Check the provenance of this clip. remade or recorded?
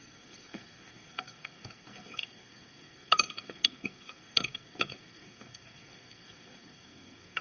remade